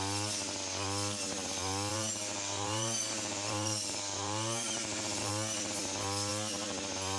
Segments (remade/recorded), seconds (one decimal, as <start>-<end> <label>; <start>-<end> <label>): 0.0-1.9 recorded; 1.9-5.3 remade; 5.3-7.2 recorded